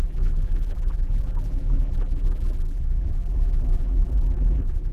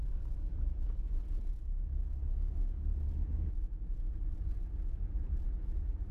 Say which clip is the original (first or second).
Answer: second